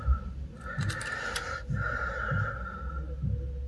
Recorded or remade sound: recorded